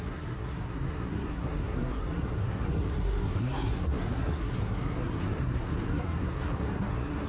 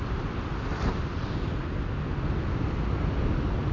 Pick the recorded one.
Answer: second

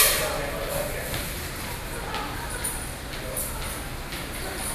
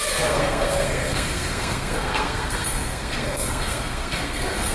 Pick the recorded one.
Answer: first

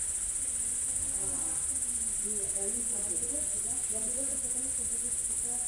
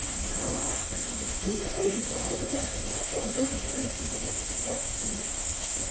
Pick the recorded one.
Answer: first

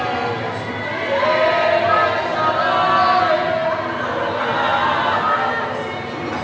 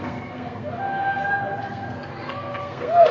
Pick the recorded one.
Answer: first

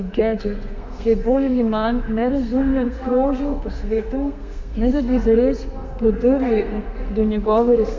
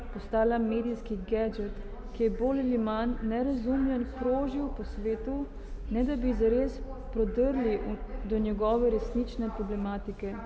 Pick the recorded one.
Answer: second